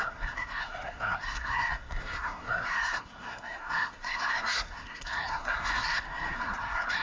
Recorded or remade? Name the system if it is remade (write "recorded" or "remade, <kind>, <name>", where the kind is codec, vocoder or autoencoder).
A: remade, codec, SNAC